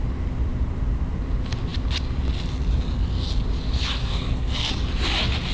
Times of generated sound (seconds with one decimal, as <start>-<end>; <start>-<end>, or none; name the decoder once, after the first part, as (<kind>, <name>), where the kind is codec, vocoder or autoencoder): 4.0-4.7 (codec, SNAC)